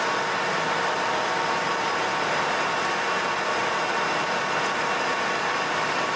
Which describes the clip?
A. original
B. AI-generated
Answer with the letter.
A